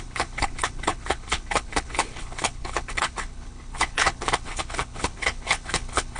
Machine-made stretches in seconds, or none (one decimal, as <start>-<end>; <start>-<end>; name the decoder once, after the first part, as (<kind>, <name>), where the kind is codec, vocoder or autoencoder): 0.0-6.2 (codec, HILCodec)